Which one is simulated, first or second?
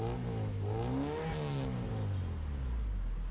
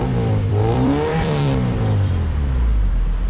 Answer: second